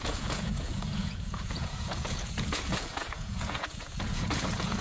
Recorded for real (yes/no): no